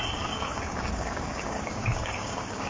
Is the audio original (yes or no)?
no